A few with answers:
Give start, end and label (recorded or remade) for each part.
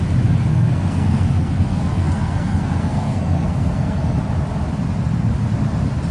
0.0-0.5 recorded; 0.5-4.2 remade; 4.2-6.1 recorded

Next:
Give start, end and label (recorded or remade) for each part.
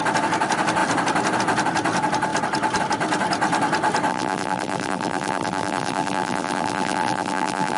0.0-4.1 recorded; 4.1-7.8 remade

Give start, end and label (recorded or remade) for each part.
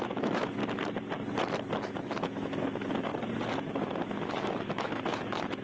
0.0-0.6 remade; 0.6-1.8 recorded; 1.8-3.1 remade; 3.1-3.7 recorded; 3.7-5.6 remade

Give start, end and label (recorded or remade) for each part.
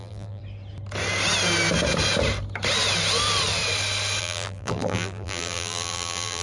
0.0-0.4 remade; 0.4-4.2 recorded; 4.2-6.4 remade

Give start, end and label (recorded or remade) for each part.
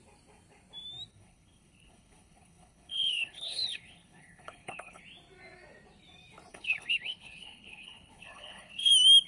0.0-1.1 recorded; 1.1-5.0 remade; 5.0-6.5 recorded; 6.5-8.9 remade; 8.9-9.3 recorded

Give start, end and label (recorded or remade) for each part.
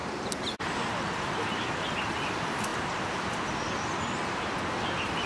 0.0-5.3 recorded